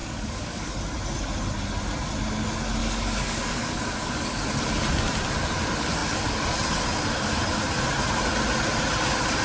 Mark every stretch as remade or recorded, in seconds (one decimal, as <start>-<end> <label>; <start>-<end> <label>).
0.0-0.7 remade; 0.7-2.8 recorded; 2.8-4.4 remade; 4.4-9.4 recorded